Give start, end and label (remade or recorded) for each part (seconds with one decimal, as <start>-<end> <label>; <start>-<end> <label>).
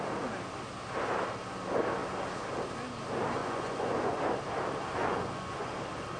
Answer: 0.0-3.4 recorded; 3.4-4.2 remade; 4.2-5.0 recorded; 5.0-5.7 remade; 5.7-6.2 recorded